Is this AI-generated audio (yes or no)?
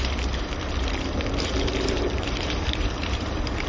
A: yes